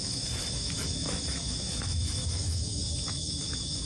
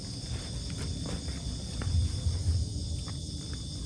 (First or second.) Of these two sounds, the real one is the second